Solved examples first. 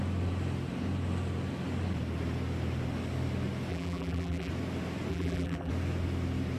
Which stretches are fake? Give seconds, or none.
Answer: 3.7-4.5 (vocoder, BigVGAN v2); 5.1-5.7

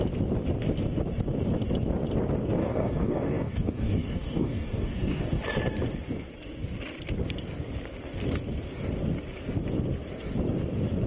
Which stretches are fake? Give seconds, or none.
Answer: 2.6-5.4 (codec, DAC)